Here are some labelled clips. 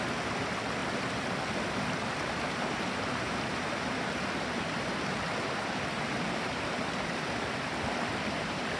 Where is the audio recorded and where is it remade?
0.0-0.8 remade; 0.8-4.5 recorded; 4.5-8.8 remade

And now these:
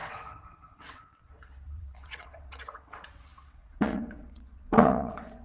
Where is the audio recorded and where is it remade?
0.0-5.4 remade

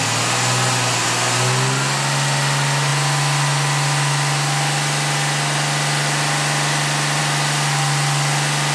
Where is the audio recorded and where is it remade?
0.0-8.7 recorded

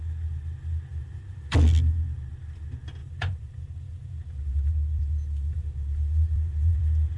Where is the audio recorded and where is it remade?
0.0-0.9 recorded; 0.9-1.6 remade; 1.6-3.0 recorded; 3.0-6.8 remade; 6.8-7.2 recorded